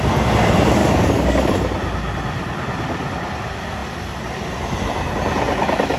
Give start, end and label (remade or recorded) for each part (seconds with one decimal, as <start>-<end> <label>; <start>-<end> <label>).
0.0-0.8 recorded; 0.8-1.5 remade; 1.5-6.0 recorded